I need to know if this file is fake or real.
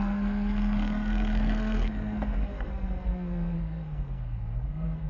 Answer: fake